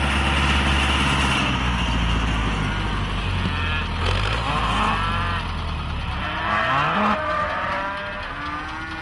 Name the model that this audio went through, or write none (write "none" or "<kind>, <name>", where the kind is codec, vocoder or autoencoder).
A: none